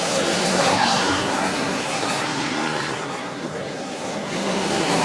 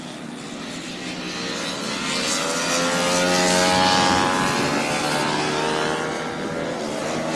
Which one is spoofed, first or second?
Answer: first